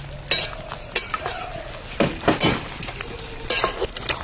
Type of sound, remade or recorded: recorded